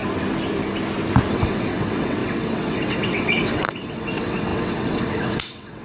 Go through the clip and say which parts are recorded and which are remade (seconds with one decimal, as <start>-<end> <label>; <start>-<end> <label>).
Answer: 0.0-1.3 recorded; 1.3-5.8 remade